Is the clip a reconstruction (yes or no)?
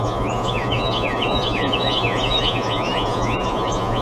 yes